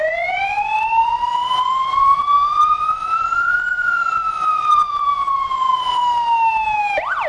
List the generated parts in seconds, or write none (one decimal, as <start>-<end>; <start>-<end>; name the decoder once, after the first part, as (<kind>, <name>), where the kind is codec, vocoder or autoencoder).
0.0-6.0 (vocoder, Vocos)